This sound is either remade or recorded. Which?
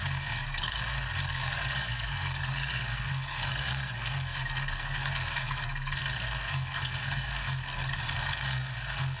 remade